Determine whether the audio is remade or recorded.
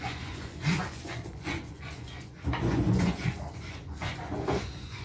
remade